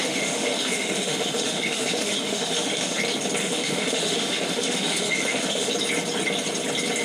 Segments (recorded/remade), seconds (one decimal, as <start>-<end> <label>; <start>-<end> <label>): 0.0-3.0 remade; 3.0-3.4 recorded; 3.4-5.7 remade; 5.7-7.0 recorded